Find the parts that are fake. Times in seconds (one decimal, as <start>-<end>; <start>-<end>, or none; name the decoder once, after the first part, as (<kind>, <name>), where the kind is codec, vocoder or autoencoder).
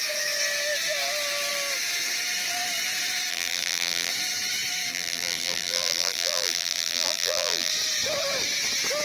3.3-4.1 (vocoder, BigVGAN v2); 4.9-7.7